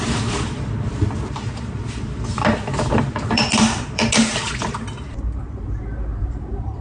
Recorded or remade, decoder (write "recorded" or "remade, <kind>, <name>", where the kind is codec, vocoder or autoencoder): remade, vocoder, BigVGAN v2